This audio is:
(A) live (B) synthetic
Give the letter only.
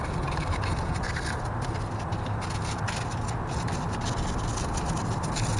A